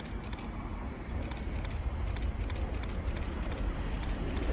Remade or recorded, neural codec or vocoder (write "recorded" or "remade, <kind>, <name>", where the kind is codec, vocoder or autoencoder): recorded